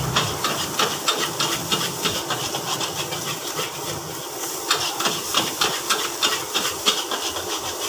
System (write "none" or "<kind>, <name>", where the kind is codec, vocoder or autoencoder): vocoder, BigVGAN v2